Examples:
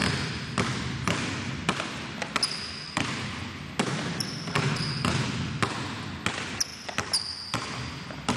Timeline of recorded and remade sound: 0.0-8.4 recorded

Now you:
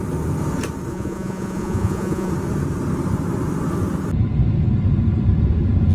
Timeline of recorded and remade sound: 0.0-0.9 recorded; 0.9-2.3 remade; 2.3-5.9 recorded

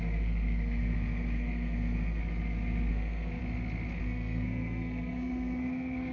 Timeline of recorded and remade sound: 0.0-2.2 remade; 2.2-2.9 recorded; 2.9-3.4 remade; 3.4-4.0 recorded; 4.0-6.1 remade